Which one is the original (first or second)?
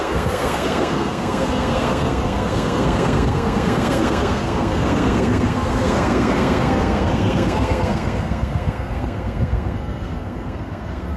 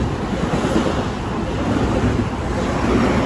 second